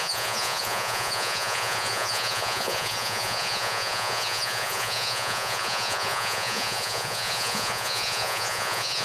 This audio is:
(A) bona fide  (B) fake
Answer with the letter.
B